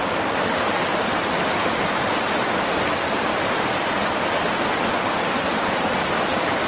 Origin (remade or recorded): recorded